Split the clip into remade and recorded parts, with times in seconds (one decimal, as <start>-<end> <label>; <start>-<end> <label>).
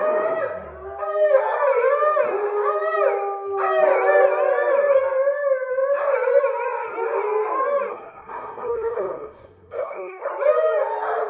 0.0-7.9 recorded; 7.9-10.3 remade; 10.3-11.3 recorded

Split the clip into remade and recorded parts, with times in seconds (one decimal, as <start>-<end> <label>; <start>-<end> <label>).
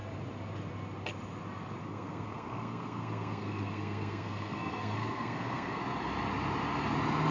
0.0-1.8 recorded; 1.8-5.8 remade; 5.8-7.3 recorded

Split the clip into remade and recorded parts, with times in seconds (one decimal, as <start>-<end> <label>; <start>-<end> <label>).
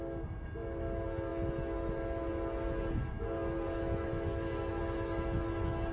0.0-5.9 recorded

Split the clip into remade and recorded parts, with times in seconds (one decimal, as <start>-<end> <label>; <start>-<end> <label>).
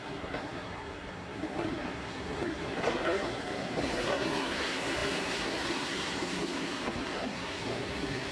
0.0-8.3 remade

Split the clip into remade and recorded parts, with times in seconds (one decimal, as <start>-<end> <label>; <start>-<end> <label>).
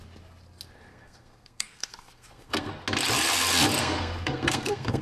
0.0-0.9 recorded; 0.9-2.7 remade; 2.7-3.8 recorded; 3.8-5.0 remade